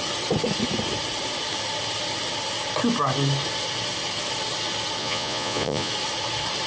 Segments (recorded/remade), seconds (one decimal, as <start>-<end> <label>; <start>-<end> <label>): 0.0-5.0 recorded; 5.0-5.9 remade; 5.9-6.7 recorded